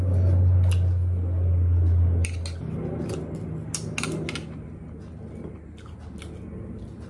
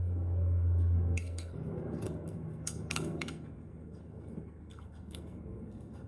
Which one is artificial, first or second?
second